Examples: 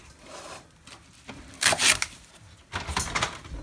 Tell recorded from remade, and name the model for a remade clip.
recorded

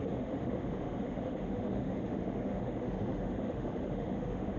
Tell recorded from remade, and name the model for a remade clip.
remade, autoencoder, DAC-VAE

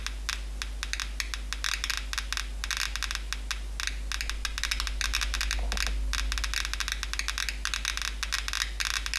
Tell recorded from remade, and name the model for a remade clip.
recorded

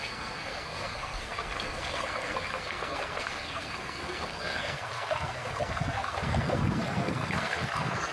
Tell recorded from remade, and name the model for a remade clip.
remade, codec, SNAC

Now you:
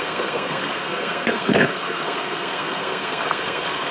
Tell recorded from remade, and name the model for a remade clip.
remade, codec, SNAC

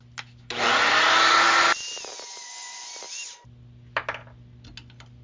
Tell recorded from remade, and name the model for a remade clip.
recorded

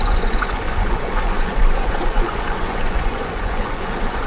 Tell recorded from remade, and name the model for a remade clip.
remade, vocoder, Vocos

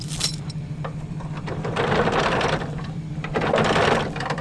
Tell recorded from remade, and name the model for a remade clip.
remade, vocoder, BigVGAN v2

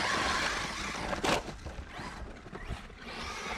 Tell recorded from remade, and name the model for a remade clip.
recorded